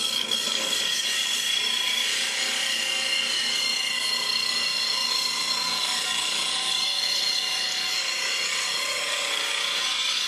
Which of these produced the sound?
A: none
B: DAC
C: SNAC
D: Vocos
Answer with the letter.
B